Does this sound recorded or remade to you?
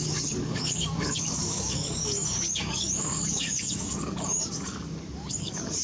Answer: remade